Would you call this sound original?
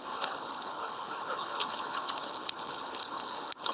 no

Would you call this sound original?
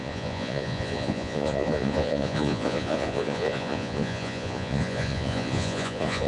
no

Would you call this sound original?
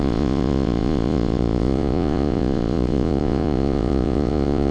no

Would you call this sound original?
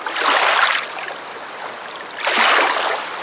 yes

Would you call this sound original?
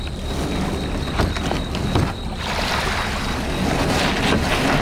yes